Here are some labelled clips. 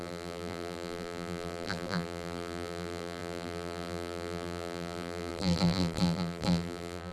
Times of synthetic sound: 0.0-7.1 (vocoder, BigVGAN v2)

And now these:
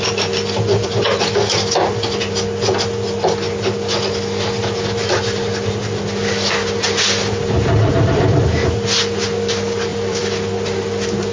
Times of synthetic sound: 7.8-8.4 (vocoder, BigVGAN v2); 9.9-10.4

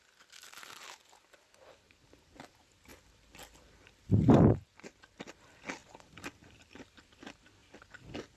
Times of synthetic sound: 2.9-4.3 (vocoder, BigVGAN v2); 5.8-6.7

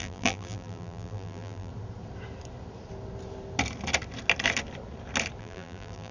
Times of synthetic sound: 0.0-1.7 (vocoder, BigVGAN v2); 5.4-6.1